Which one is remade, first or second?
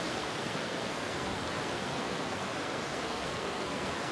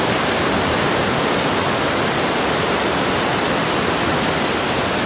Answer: first